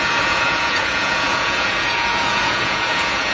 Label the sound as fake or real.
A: fake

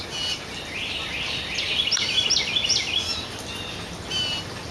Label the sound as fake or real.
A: real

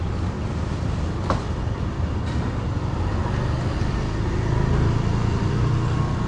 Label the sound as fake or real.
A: real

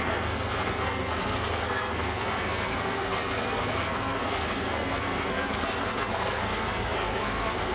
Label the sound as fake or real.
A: fake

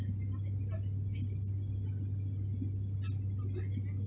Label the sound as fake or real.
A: real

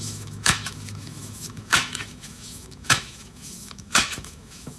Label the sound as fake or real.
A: fake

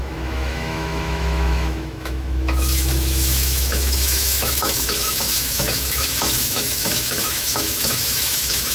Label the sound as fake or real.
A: fake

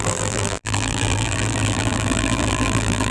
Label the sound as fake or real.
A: fake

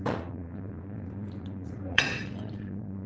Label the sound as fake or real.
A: fake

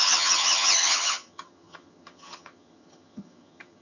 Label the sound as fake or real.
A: fake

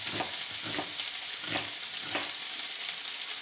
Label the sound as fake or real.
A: real